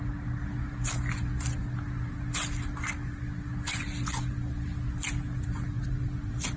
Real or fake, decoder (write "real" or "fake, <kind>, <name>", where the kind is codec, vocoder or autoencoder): real